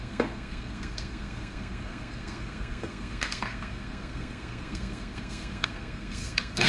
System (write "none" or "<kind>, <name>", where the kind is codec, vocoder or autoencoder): codec, SNAC